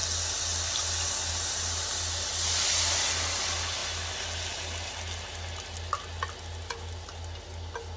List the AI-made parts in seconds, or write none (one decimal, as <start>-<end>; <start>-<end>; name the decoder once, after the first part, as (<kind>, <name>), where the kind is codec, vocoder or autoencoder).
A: none